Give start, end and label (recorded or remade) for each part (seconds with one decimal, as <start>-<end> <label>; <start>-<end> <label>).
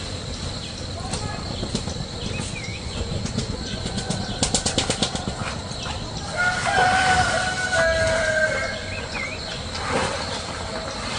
0.0-2.7 recorded; 2.7-4.2 remade; 4.2-8.6 recorded; 8.6-9.6 remade; 9.6-11.2 recorded